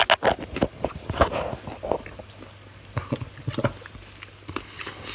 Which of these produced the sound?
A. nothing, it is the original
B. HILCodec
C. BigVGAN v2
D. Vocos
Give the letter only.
A